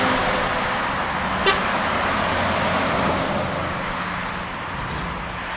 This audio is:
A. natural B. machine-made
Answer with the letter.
A